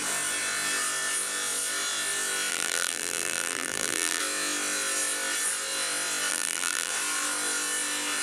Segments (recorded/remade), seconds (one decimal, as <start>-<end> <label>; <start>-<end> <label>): 0.0-2.5 recorded; 2.5-4.2 remade; 4.2-6.3 recorded; 6.3-6.9 remade; 6.9-8.2 recorded